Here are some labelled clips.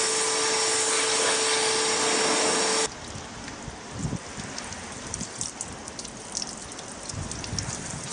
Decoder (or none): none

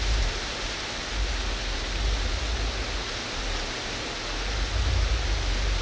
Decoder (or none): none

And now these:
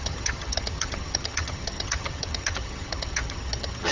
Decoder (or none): vocoder, HiFi-GAN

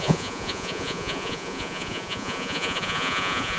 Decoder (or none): vocoder, Vocos